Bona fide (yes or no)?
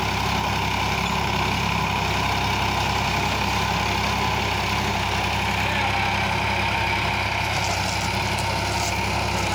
yes